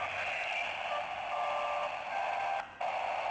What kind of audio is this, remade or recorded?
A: recorded